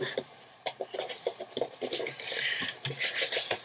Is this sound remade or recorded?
remade